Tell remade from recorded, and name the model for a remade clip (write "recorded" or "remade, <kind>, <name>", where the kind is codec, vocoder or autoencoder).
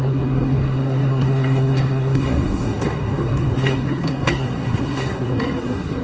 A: remade, codec, SNAC